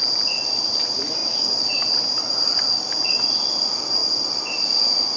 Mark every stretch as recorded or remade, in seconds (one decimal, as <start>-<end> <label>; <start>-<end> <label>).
0.0-5.2 recorded